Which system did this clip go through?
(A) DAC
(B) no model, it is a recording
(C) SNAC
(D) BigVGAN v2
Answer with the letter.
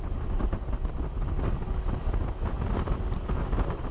B